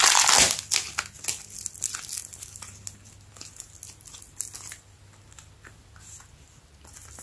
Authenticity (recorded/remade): recorded